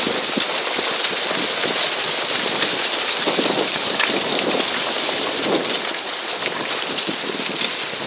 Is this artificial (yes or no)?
yes